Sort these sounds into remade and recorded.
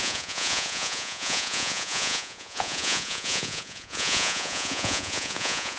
remade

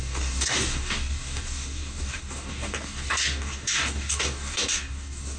remade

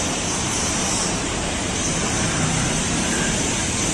remade